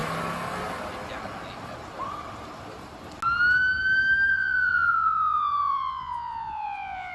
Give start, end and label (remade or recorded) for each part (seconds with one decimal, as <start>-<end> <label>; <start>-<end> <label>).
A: 0.0-4.3 recorded; 4.3-7.1 remade